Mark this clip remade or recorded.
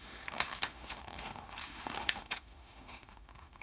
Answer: remade